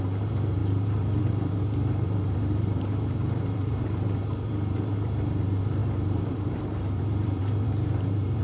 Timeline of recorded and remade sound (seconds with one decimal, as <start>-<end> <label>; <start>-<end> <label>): 0.0-8.4 remade